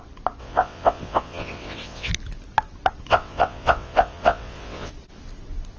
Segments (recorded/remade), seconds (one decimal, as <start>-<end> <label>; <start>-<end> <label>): 0.0-0.4 recorded; 0.4-2.1 remade; 2.1-3.1 recorded; 3.1-4.9 remade; 4.9-5.8 recorded